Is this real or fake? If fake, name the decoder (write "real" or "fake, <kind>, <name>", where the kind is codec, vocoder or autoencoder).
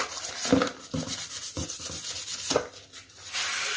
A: real